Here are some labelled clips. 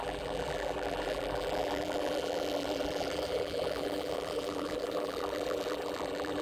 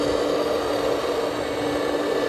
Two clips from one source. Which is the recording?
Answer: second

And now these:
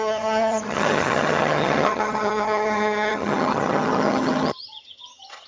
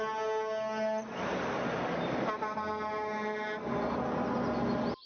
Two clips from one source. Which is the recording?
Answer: second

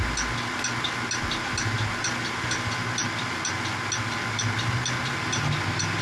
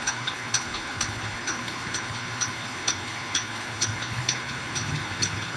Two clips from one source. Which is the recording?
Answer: first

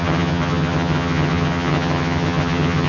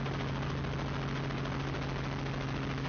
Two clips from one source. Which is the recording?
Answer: second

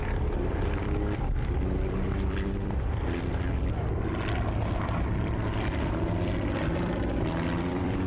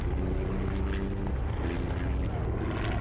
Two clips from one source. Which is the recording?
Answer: second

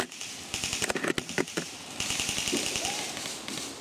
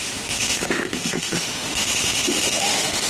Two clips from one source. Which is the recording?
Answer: first